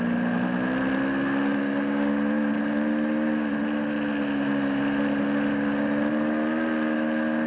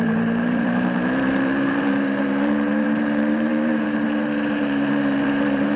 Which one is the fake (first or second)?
second